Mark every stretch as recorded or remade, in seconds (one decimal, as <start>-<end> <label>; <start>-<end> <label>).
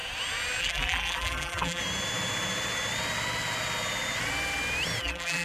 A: 0.0-0.6 recorded; 0.6-1.8 remade; 1.8-5.0 recorded; 5.0-5.4 remade